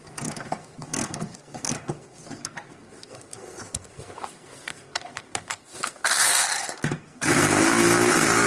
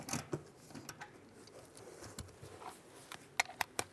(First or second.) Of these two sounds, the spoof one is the first